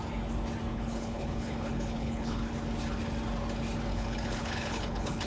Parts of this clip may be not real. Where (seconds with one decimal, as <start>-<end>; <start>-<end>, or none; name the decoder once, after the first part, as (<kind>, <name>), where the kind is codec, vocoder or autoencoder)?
0.7-2.5 (codec, HILCodec); 3.9-5.3